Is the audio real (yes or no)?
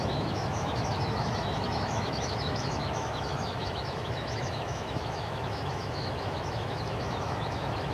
no